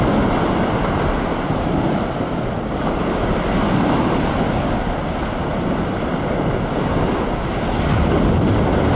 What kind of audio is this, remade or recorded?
recorded